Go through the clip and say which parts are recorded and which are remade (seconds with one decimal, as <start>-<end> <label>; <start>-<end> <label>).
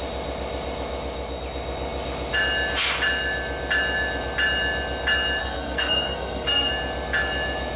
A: 0.0-5.4 recorded; 5.4-6.7 remade; 6.7-7.8 recorded